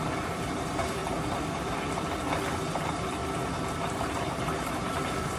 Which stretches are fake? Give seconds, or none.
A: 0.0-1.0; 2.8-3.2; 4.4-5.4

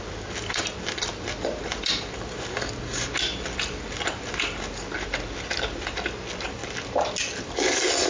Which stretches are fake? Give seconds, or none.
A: none

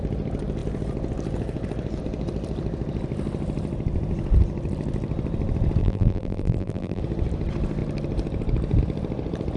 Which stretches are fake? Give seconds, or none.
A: 5.8-7.0

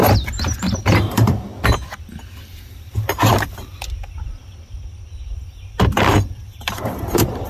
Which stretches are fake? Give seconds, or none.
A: 1.1-1.5; 2.7-3.3; 6.1-7.5